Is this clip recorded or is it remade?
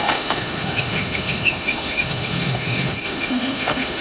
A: remade